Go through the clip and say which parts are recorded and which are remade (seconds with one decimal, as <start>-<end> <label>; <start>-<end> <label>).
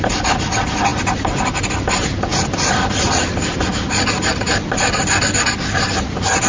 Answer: 0.0-6.5 recorded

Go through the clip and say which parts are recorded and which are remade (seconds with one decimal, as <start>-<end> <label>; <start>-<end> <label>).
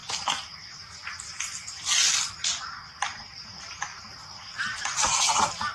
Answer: 0.0-0.6 remade; 0.6-3.9 recorded; 3.9-5.7 remade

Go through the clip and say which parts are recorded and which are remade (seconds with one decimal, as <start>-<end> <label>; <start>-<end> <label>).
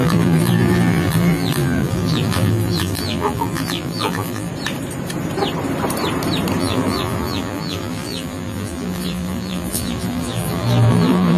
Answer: 0.0-4.5 remade; 4.5-6.6 recorded; 6.6-11.4 remade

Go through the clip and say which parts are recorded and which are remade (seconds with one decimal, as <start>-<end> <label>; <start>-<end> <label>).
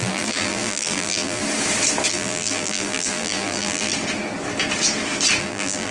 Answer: 0.0-1.4 remade; 1.4-2.1 recorded; 2.1-3.9 remade; 3.9-5.4 recorded; 5.4-5.9 remade